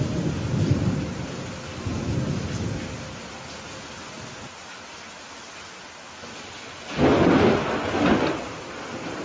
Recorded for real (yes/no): yes